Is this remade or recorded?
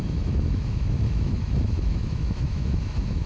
remade